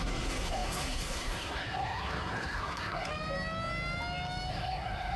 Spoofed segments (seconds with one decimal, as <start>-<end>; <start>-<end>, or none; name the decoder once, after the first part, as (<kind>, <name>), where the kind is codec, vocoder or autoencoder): 0.0-3.1 (codec, SNAC); 4.5-5.2